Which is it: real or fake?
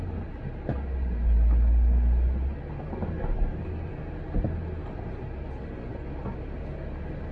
real